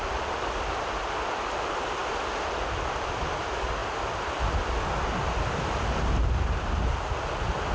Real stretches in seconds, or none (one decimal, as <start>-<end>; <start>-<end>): 0.0-7.7